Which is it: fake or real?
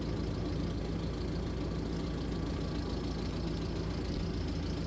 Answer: real